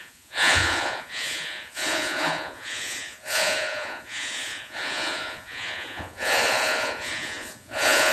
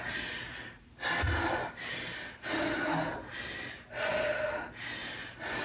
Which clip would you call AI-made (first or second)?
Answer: first